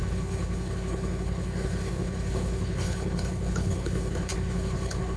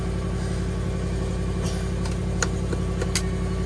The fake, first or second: first